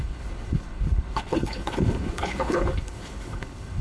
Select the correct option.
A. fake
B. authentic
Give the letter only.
A